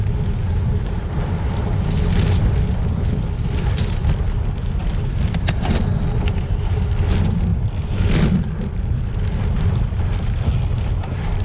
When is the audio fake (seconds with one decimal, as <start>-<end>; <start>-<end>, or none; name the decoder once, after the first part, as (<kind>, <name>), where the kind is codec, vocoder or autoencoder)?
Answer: none